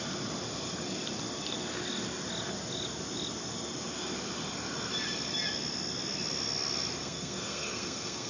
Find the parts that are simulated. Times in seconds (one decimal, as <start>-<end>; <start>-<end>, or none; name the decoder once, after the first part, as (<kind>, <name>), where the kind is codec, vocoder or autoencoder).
7.0-8.3 (codec, SNAC)